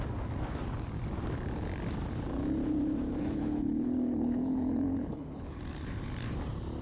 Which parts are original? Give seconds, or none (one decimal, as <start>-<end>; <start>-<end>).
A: 0.0-3.2; 5.6-6.8